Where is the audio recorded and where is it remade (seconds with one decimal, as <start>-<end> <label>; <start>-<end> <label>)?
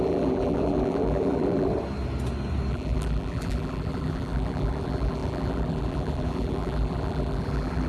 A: 0.0-1.7 remade; 1.7-2.7 recorded; 2.7-7.9 remade